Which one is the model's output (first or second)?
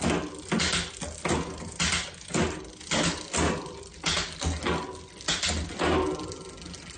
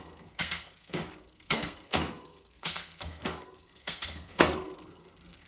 second